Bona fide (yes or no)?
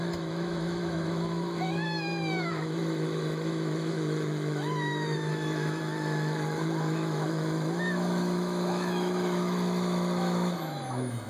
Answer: no